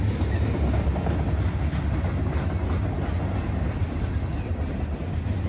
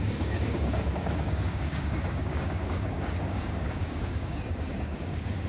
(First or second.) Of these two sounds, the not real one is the second